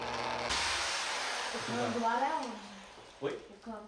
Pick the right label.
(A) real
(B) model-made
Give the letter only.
A